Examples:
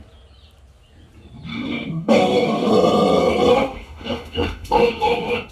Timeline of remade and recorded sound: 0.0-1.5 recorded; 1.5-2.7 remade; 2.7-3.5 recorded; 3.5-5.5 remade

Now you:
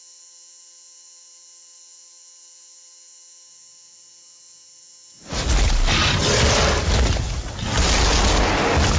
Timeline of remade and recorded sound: 0.0-9.0 recorded

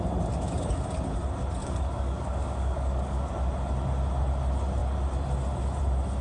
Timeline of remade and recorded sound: 0.0-1.6 recorded; 1.6-3.3 remade; 3.3-6.2 recorded

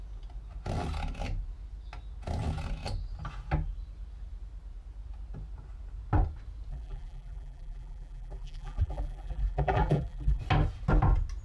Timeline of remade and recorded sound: 0.0-6.7 recorded; 6.7-10.4 remade; 10.4-11.4 recorded

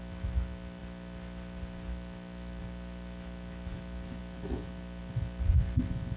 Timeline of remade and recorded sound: 0.0-6.2 recorded

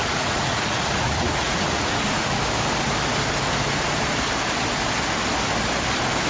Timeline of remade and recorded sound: 0.0-2.4 remade; 2.4-6.3 recorded

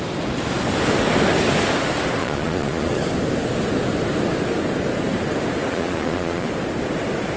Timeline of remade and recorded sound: 0.0-2.2 recorded; 2.2-3.0 remade; 3.0-5.7 recorded; 5.7-6.5 remade; 6.5-7.4 recorded